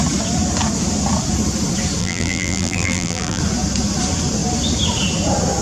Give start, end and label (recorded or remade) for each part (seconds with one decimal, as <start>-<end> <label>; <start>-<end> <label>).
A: 0.0-2.0 recorded; 2.0-3.4 remade; 3.4-5.6 recorded